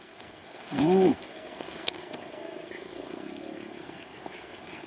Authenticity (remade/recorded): remade